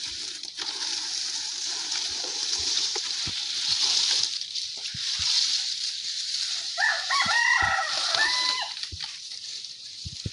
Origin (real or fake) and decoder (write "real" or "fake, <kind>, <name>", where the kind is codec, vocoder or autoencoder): fake, vocoder, BigVGAN v2